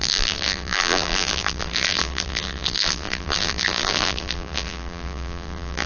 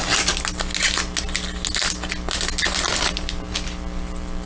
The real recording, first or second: second